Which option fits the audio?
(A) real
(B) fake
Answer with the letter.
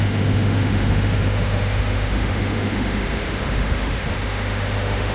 B